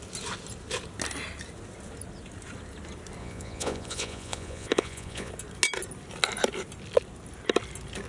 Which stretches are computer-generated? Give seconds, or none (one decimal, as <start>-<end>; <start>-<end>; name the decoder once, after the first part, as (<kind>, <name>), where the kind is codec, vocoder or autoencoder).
3.2-5.3 (vocoder, Vocos)